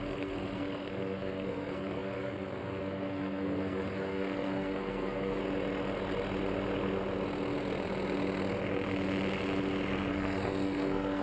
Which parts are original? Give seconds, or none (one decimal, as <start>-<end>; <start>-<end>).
5.4-10.1